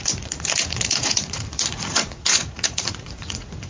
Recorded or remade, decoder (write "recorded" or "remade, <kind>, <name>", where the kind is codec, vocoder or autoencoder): remade, vocoder, Vocos